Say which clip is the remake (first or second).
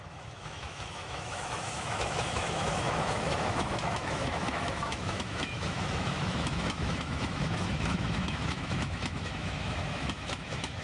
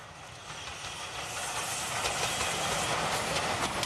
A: first